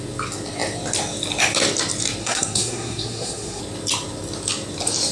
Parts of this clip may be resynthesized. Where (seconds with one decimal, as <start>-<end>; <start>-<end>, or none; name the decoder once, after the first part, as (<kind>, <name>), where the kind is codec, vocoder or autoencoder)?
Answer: 2.2-3.6 (codec, SNAC)